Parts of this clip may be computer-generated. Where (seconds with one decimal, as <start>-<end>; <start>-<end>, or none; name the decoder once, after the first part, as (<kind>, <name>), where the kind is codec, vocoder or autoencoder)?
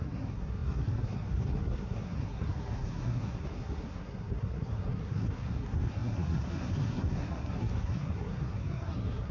0.0-9.3 (codec, SNAC)